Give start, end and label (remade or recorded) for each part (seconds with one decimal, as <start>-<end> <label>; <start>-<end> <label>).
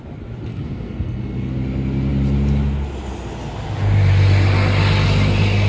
0.0-0.5 recorded; 0.5-1.5 remade; 1.5-5.7 recorded